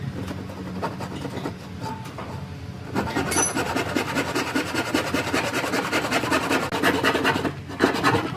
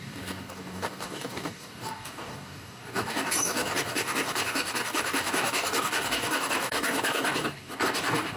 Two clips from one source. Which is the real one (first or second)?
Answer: first